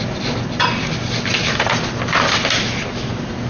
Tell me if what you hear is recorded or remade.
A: recorded